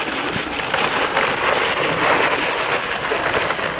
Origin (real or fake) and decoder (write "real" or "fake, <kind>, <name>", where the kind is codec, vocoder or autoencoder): real